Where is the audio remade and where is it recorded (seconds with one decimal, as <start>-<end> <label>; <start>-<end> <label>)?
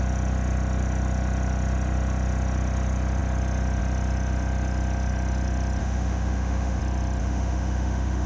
0.0-5.8 recorded; 5.8-6.8 remade; 6.8-7.2 recorded; 7.2-8.3 remade